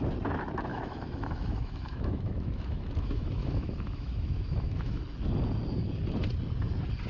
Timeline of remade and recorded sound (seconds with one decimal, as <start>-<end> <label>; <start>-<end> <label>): 0.0-0.7 recorded; 0.7-5.0 remade; 5.0-7.1 recorded

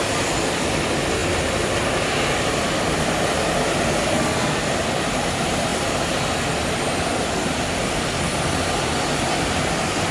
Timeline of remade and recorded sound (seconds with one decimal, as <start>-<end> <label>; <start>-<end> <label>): 0.0-4.0 recorded; 4.0-4.6 remade; 4.6-10.1 recorded

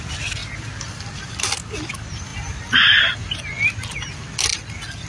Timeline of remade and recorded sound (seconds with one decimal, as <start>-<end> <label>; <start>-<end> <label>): 0.0-5.1 recorded

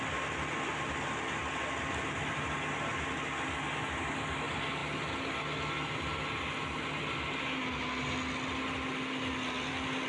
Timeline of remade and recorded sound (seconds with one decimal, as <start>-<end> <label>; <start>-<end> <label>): 0.0-10.1 recorded

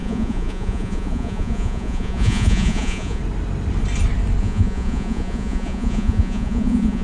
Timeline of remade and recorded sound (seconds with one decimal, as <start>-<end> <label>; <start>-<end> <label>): 0.0-3.2 remade; 3.2-4.4 recorded; 4.4-7.0 remade

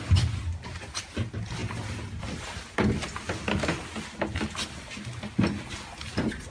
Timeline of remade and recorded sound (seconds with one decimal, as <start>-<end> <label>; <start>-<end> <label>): 0.0-6.5 recorded

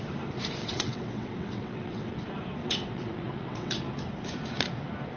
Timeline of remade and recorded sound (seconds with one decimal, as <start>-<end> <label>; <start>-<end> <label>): 0.0-0.6 recorded; 0.6-2.1 remade; 2.1-2.6 recorded; 2.6-3.7 remade; 3.7-5.2 recorded